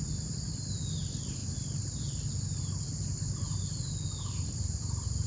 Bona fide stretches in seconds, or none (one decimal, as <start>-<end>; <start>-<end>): 0.0-5.3